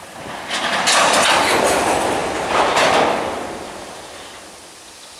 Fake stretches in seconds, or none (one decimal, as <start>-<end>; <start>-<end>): none